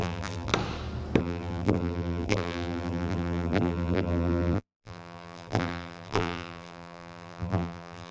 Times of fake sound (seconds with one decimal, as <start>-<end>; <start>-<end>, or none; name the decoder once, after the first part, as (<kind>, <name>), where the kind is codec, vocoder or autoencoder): 0.0-0.5 (vocoder, BigVGAN v2); 1.2-8.1